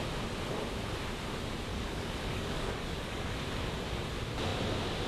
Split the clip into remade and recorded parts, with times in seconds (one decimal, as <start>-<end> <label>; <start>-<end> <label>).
0.0-1.7 recorded; 1.7-3.3 remade; 3.3-5.1 recorded